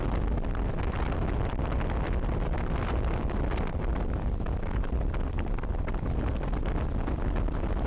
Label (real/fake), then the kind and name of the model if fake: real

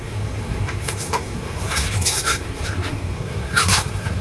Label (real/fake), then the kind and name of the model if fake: fake, codec, SNAC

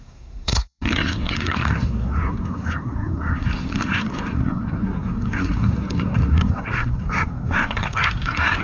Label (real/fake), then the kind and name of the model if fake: fake, codec, SNAC